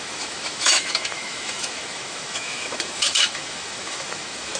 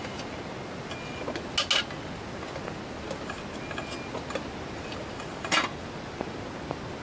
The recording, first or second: second